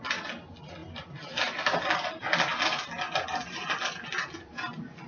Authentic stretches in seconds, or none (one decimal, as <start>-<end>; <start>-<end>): 0.0-5.1